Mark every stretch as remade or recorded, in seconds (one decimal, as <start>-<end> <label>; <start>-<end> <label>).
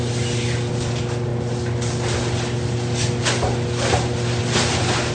0.0-5.1 recorded